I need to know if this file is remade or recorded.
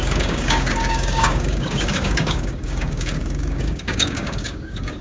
remade